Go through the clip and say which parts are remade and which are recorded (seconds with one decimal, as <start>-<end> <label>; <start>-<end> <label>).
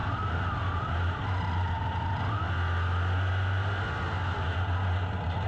0.0-5.5 recorded